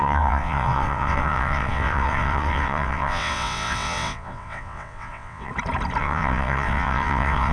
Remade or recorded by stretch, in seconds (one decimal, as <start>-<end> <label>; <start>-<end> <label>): 0.0-5.5 remade; 5.5-6.0 recorded; 6.0-7.5 remade